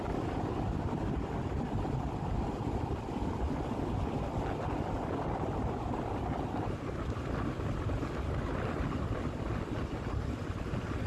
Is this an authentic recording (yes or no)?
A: yes